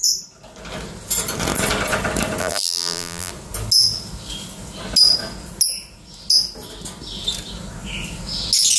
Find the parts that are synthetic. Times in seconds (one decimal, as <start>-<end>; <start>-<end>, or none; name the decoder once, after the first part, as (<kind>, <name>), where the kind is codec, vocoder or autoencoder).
2.4-3.3 (vocoder, BigVGAN v2)